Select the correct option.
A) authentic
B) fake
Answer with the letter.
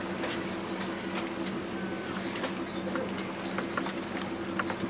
A